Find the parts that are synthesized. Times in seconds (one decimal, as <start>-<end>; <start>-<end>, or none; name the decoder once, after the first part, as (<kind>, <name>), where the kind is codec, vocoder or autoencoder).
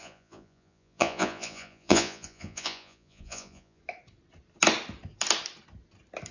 0.0-3.8 (vocoder, Vocos)